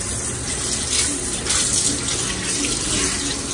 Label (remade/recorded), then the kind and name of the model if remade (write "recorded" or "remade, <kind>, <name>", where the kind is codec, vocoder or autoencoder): recorded